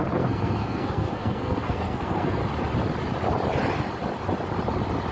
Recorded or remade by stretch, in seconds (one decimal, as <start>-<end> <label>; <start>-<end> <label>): 0.0-2.4 remade; 2.4-5.1 recorded

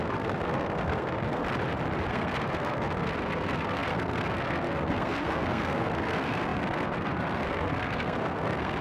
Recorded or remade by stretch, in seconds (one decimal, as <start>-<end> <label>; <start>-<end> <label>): 0.0-1.4 remade; 1.4-2.1 recorded; 2.1-8.8 remade

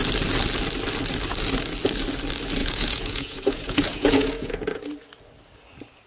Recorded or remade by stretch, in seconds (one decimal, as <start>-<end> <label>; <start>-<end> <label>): 0.0-2.6 recorded; 2.6-4.8 remade; 4.8-6.1 recorded

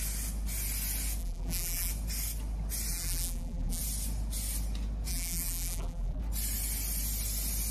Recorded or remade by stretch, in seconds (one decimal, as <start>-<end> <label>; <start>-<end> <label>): 0.0-1.2 recorded; 1.2-1.9 remade; 1.9-2.9 recorded; 2.9-3.8 remade; 3.8-5.1 recorded; 5.1-6.2 remade; 6.2-7.7 recorded